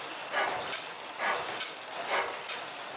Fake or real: real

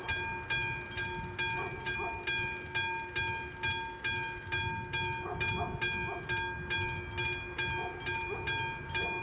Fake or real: real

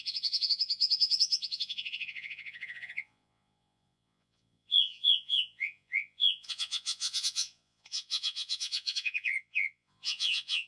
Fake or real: fake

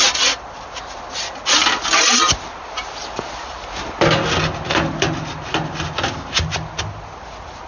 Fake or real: real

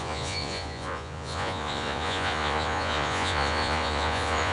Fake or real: fake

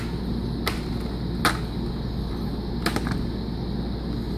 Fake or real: real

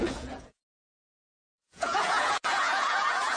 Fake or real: fake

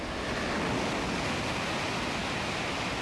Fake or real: real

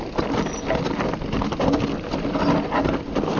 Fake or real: real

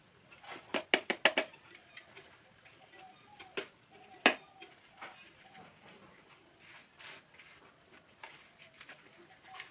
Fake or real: real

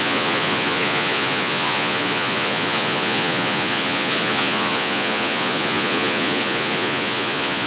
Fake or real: fake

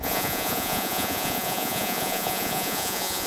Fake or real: fake